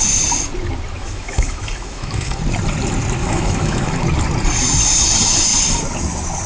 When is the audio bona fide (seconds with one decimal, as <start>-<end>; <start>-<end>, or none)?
0.0-1.0; 2.4-3.2; 4.0-6.5